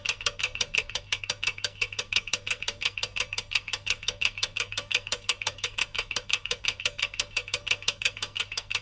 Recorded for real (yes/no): no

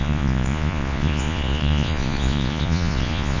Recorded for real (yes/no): no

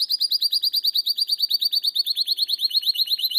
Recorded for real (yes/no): yes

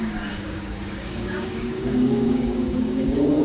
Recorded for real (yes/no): no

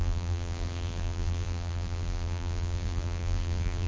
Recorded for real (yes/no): no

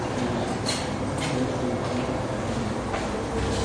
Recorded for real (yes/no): yes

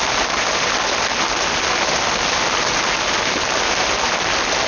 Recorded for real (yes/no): yes